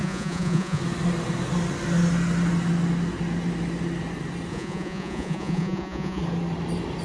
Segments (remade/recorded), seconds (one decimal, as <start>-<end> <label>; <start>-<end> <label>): 0.0-0.8 remade; 0.8-4.5 recorded; 4.5-6.2 remade; 6.2-7.0 recorded

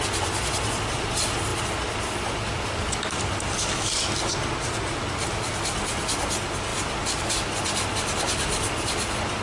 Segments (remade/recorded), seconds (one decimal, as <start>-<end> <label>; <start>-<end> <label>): 0.0-9.4 recorded

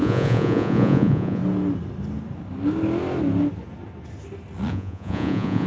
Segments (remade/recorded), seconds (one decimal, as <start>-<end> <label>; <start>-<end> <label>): 0.0-1.4 remade; 1.4-4.7 recorded; 4.7-5.7 remade